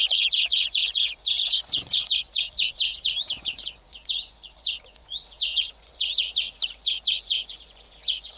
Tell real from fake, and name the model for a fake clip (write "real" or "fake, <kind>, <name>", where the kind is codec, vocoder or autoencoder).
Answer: fake, vocoder, Vocos